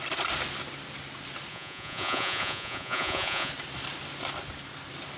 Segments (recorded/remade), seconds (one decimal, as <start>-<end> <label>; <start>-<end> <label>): 0.0-1.5 recorded; 1.5-3.5 remade; 3.5-5.2 recorded